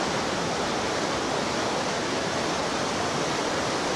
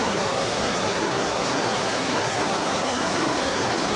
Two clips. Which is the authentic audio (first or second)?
first